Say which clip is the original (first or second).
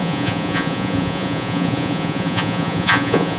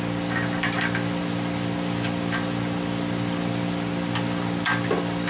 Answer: second